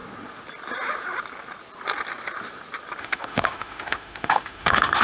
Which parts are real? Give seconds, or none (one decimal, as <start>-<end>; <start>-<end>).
0.0-3.0